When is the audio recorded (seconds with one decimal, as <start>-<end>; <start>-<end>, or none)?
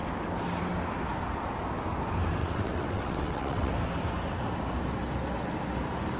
0.0-2.4; 3.7-6.2